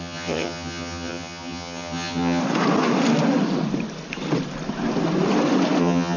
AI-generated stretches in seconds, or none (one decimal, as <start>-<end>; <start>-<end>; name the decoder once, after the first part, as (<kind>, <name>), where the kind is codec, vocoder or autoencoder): 0.0-2.4 (vocoder, HiFi-GAN); 5.8-6.2